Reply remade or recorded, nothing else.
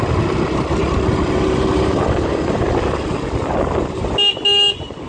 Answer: recorded